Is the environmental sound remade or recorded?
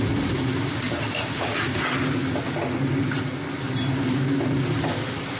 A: recorded